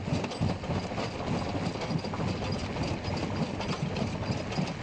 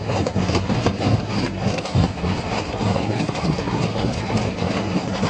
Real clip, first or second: first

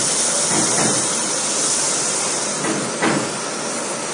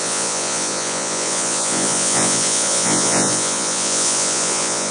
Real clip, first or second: first